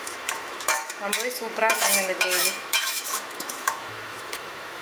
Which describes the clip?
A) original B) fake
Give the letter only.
B